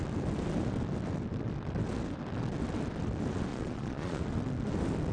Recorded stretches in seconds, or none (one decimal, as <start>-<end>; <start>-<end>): 0.0-3.5; 4.2-5.1